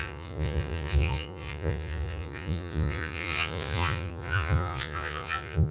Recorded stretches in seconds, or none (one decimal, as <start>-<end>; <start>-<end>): none